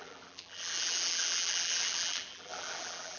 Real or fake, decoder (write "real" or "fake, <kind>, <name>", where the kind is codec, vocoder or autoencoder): fake, vocoder, BigVGAN v2